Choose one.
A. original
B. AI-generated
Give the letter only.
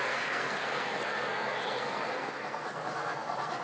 B